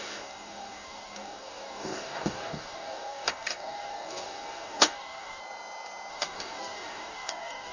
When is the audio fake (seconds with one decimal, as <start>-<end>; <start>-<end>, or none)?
0.0-5.4; 6.1-7.7